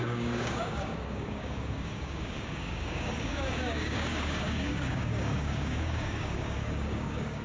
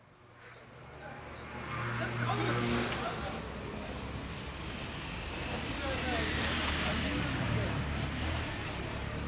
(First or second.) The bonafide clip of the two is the second